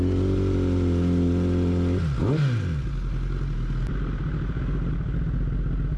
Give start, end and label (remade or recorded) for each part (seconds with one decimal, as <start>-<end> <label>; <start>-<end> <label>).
0.0-6.0 recorded